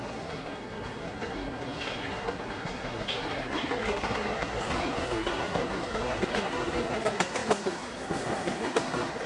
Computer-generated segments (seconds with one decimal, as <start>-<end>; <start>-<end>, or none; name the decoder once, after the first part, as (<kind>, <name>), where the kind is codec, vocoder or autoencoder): 0.0-9.3 (codec, SNAC)